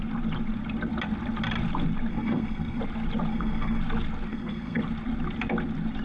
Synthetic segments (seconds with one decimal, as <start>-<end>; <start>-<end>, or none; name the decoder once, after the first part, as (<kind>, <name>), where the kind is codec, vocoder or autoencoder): 2.1-2.8 (codec, SNAC); 3.3-3.8; 4.3-4.8